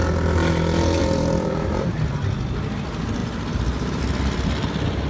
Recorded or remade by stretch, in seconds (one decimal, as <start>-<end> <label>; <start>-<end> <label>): 0.0-1.0 recorded; 1.0-1.9 remade; 1.9-3.2 recorded; 3.2-4.0 remade; 4.0-5.1 recorded